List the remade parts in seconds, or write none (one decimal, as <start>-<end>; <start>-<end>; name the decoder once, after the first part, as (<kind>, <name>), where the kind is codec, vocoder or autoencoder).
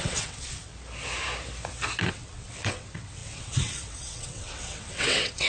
0.0-0.7 (vocoder, WaveNeXt); 2.1-5.5